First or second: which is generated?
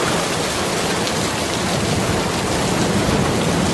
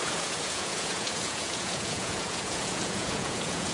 second